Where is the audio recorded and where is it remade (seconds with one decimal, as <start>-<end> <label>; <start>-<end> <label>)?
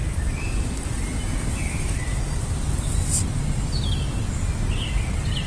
0.0-5.5 recorded